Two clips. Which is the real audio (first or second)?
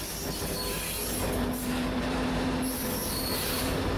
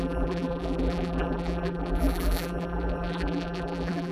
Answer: first